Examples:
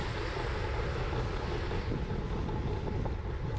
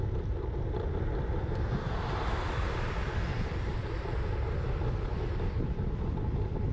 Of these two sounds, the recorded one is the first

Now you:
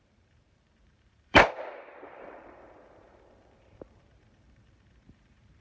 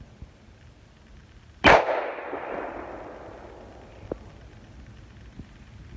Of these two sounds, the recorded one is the second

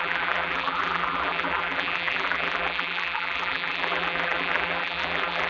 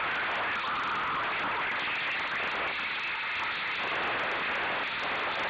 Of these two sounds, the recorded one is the second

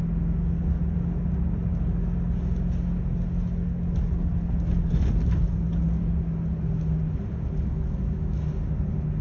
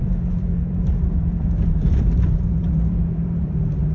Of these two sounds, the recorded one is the first